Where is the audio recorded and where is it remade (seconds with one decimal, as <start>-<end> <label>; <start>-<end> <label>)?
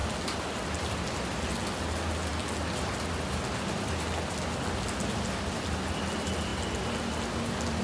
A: 0.0-7.8 recorded